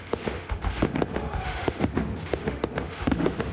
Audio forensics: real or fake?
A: fake